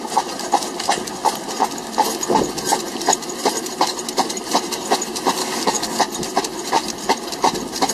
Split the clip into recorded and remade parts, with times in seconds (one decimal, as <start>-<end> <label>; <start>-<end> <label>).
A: 0.0-5.4 recorded; 5.4-6.0 remade; 6.0-7.9 recorded